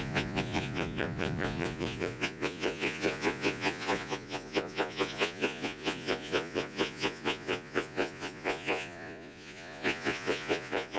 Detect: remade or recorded remade